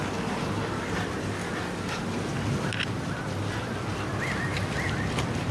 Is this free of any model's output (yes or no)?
yes